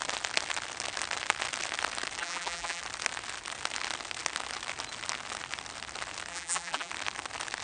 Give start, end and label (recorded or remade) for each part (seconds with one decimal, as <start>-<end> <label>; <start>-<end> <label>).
0.0-2.2 recorded; 2.2-2.8 remade; 2.8-6.3 recorded; 6.3-6.9 remade; 6.9-7.6 recorded